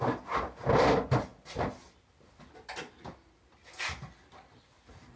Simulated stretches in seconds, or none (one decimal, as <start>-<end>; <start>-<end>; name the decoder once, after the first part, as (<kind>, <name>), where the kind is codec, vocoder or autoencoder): none